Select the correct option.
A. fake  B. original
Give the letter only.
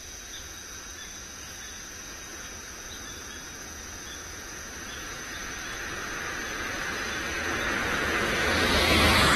A